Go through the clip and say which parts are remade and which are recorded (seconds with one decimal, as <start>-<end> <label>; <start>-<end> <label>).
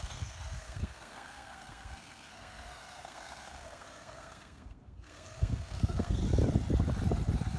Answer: 0.0-6.2 remade; 6.2-7.6 recorded